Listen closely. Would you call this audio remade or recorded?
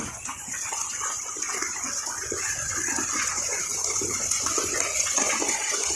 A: remade